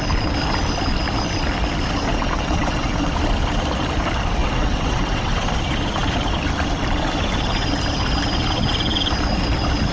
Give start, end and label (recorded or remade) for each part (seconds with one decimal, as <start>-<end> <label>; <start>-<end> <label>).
0.0-2.1 recorded; 2.1-3.1 remade; 3.1-4.4 recorded; 4.4-5.5 remade; 5.5-9.9 recorded